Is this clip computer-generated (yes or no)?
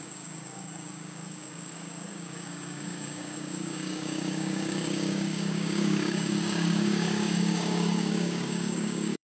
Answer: yes